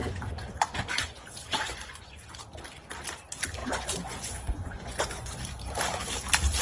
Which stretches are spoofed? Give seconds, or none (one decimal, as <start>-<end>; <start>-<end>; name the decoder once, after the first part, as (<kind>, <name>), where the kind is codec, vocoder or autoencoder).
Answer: 0.0-2.4 (vocoder, Vocos); 3.6-5.4